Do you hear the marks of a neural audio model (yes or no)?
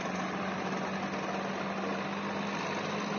no